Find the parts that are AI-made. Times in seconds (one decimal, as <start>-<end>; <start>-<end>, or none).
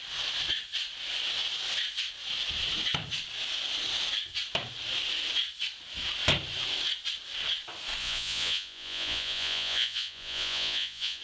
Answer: 8.0-11.2